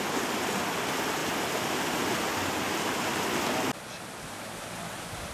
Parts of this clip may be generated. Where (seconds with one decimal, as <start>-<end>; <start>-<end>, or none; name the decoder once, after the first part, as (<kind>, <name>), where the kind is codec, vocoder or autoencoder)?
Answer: none